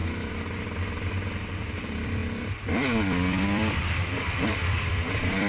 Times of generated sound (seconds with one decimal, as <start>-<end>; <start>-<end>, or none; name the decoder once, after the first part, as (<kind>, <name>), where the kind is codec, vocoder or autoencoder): 1.6-5.5 (vocoder, BigVGAN v2)